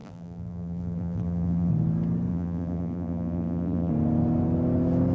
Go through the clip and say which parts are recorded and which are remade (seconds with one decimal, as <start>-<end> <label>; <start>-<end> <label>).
0.0-1.7 remade; 1.7-2.3 recorded; 2.3-3.9 remade; 3.9-5.1 recorded